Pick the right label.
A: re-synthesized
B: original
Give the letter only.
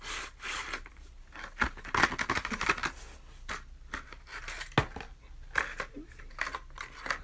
B